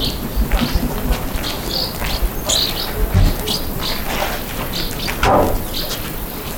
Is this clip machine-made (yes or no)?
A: no